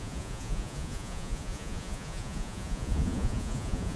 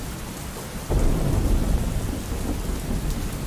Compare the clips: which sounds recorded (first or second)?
second